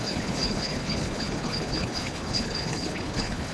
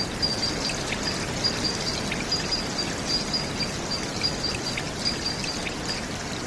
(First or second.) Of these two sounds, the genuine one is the second